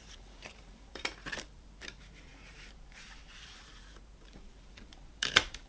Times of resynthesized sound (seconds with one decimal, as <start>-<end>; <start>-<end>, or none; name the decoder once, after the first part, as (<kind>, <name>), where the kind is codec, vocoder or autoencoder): 0.0-5.7 (vocoder, BigVGAN v2)